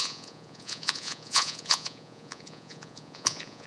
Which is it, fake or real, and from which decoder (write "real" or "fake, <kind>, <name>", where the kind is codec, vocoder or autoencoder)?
fake, vocoder, Vocos